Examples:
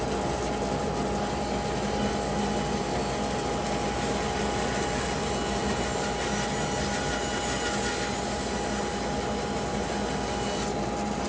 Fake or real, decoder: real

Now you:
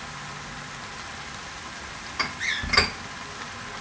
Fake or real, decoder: real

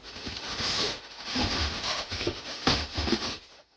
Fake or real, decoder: fake, autoencoder, DAC-VAE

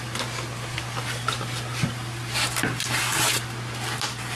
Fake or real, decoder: real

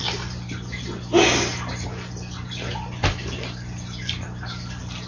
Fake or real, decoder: real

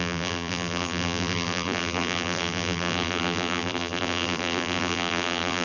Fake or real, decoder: fake, vocoder, BigVGAN v2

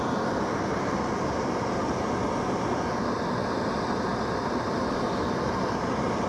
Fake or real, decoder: real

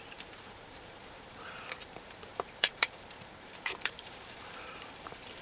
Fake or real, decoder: fake, vocoder, BigVGAN v2